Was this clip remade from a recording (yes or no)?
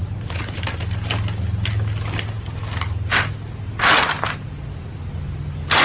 no